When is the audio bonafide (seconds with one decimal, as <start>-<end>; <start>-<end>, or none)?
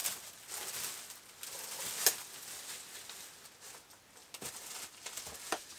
0.0-5.8